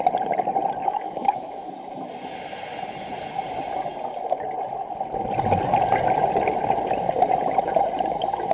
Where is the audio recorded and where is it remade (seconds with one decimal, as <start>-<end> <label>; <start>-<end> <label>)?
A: 0.0-0.8 recorded; 0.8-1.7 remade; 1.7-8.5 recorded